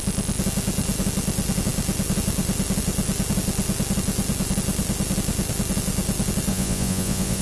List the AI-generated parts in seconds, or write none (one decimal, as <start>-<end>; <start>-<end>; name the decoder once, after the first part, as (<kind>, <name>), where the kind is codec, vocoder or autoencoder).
6.5-7.4 (vocoder, Vocos)